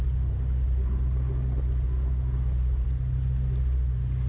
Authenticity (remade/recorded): recorded